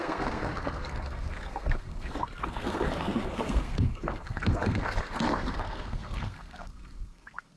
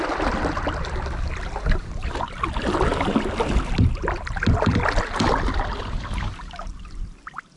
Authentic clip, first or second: second